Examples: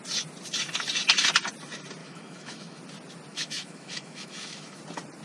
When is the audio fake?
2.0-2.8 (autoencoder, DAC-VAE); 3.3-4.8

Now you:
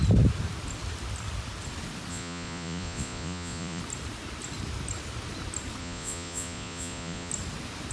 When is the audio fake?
2.1-3.8 (vocoder, Vocos); 5.8-7.3

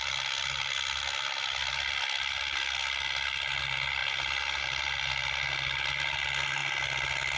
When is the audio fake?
none

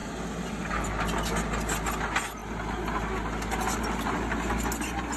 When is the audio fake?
none

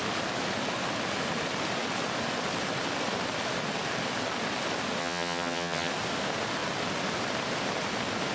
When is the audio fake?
5.0-5.9 (vocoder, HiFi-GAN)